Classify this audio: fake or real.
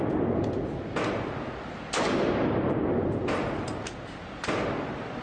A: real